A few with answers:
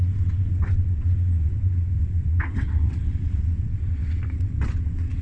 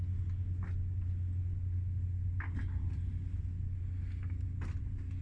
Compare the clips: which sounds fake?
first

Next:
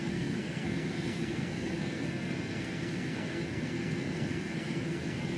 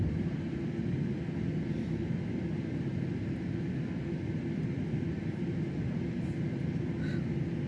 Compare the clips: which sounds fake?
first